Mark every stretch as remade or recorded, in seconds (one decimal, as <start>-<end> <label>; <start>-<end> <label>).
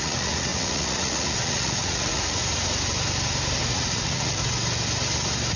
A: 0.0-2.4 remade; 2.4-3.7 recorded; 3.7-4.4 remade; 4.4-5.6 recorded